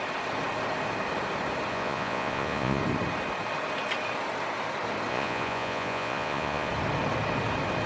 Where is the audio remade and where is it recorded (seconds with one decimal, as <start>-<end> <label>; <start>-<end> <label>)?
0.0-1.7 recorded; 1.7-2.8 remade; 2.8-5.1 recorded; 5.1-6.7 remade; 6.7-7.9 recorded